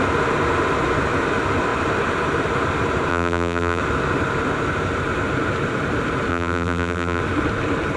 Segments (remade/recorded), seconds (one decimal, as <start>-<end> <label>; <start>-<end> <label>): 0.0-3.1 recorded; 3.1-3.8 remade; 3.8-6.3 recorded; 6.3-7.2 remade; 7.2-8.0 recorded